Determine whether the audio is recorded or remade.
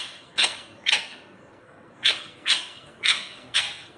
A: remade